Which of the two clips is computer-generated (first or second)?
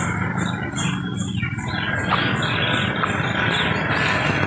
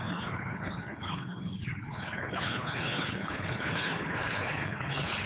second